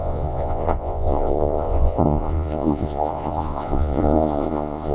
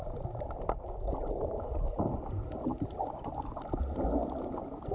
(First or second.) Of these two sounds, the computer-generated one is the first